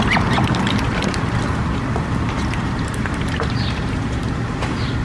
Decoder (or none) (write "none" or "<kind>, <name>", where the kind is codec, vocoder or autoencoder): vocoder, BigVGAN v2